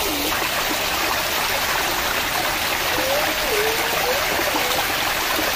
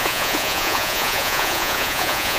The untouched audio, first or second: first